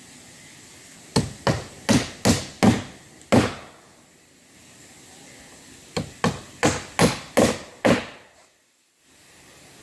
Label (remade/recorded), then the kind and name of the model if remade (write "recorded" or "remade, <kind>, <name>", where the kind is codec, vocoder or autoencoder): recorded